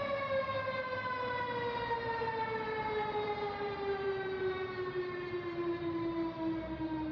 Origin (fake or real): fake